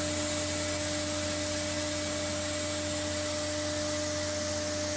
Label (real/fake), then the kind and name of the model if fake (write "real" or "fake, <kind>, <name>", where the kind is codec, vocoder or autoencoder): real